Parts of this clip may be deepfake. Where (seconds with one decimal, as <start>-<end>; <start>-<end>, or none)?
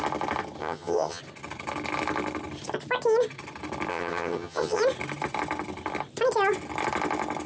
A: 0.6-1.2; 3.9-4.8